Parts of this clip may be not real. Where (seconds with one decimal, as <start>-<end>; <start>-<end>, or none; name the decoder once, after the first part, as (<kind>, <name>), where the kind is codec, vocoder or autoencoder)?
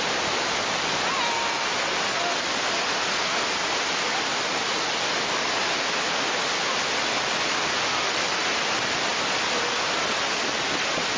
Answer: none